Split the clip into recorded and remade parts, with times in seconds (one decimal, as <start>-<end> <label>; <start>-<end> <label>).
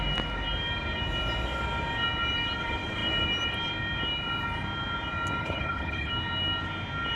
0.0-5.4 recorded; 5.4-6.1 remade; 6.1-7.2 recorded